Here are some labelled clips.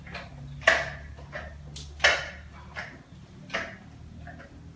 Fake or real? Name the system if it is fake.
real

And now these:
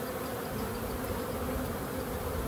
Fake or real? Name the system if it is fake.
real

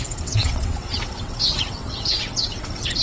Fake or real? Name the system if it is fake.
fake, vocoder, WaveNeXt